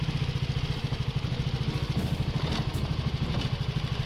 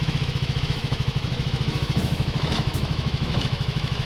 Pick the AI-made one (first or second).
second